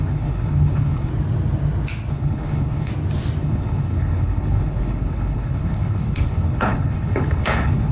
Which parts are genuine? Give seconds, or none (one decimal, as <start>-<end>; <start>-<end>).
1.1-2.1; 2.9-3.4